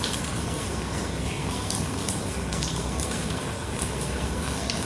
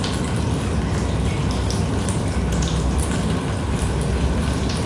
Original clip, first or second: second